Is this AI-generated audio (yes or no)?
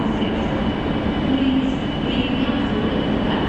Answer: no